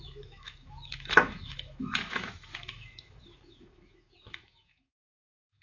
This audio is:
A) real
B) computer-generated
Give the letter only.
B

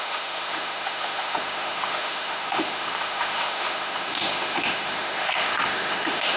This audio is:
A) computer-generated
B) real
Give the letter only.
A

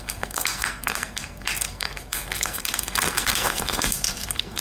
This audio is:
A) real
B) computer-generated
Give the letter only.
B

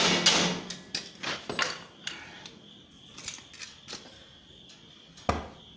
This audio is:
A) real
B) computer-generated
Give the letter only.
A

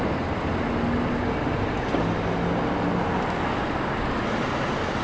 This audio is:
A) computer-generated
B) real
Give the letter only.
B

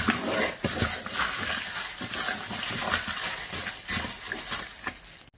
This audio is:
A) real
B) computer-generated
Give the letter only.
A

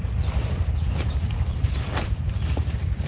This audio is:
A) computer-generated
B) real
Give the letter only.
A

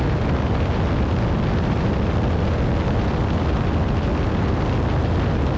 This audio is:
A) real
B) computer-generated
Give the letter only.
A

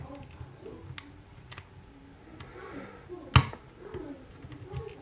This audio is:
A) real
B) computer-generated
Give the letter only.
A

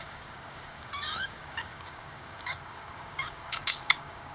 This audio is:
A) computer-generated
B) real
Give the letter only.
A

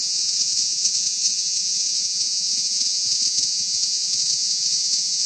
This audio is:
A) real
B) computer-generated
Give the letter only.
B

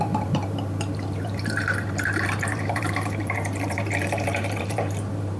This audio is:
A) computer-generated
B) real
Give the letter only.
A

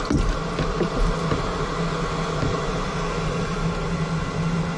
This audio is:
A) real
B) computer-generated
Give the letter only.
A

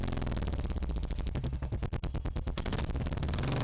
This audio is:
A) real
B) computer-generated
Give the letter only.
A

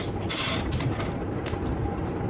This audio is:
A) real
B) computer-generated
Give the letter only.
A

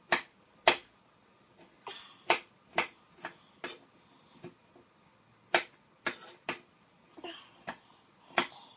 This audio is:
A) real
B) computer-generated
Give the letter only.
A